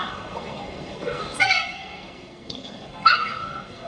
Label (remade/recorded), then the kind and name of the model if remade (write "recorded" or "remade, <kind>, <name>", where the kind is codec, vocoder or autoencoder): remade, codec, SNAC